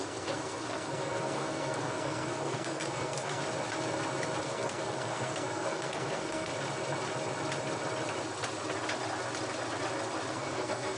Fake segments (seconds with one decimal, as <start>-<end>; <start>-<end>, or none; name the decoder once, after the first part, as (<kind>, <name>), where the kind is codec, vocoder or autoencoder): 0.0-3.4 (codec, SNAC); 4.4-6.5; 10.3-11.0